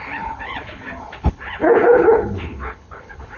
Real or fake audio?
fake